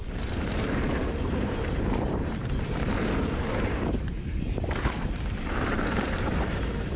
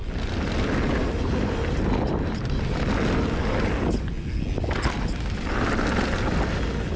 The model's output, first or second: first